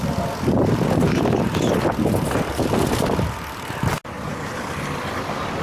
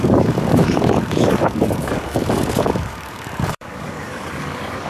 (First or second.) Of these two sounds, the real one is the first